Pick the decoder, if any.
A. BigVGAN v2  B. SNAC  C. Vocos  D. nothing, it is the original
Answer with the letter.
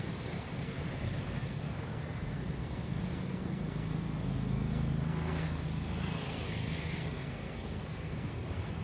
B